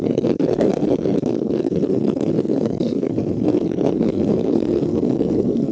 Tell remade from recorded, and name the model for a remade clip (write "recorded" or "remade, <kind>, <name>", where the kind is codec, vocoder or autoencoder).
remade, codec, SNAC